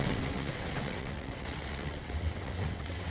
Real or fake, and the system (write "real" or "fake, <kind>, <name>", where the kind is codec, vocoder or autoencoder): fake, vocoder, WaveNeXt